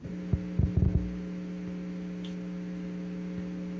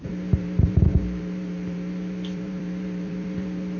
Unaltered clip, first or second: first